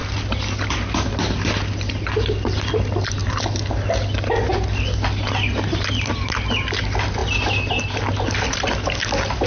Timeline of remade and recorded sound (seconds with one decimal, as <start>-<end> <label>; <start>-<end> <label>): 0.0-9.5 recorded